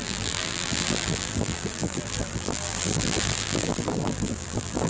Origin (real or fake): fake